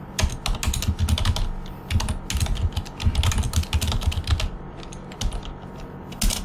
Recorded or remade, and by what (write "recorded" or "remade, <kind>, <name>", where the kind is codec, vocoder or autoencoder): recorded